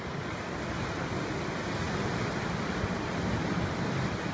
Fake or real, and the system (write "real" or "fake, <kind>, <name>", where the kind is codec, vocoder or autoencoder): real